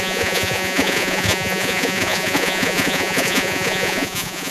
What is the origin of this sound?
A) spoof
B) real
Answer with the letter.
A